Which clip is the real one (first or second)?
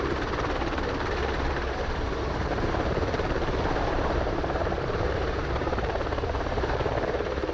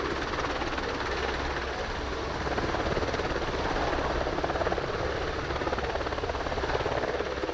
second